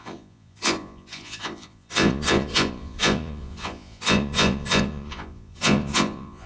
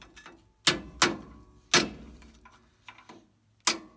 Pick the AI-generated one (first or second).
first